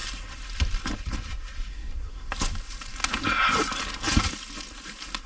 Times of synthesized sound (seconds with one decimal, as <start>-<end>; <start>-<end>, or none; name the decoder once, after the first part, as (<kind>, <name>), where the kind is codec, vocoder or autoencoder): 1.7-2.3 (codec, SNAC)